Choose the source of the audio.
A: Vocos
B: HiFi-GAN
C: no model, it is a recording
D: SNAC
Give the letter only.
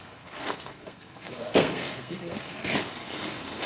D